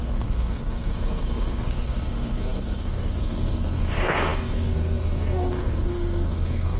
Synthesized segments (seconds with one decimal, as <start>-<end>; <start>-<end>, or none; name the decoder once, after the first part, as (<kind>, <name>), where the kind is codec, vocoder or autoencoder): 0.0-6.8 (codec, SNAC)